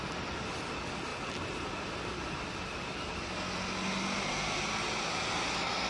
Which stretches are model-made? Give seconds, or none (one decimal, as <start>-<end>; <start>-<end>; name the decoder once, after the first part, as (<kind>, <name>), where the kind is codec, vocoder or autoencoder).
none